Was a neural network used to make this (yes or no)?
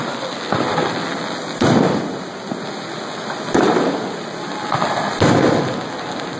no